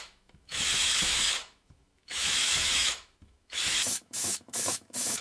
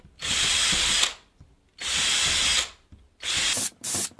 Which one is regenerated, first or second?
first